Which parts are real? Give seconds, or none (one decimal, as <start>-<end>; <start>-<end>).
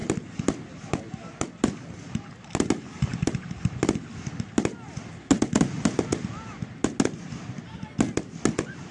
0.0-8.9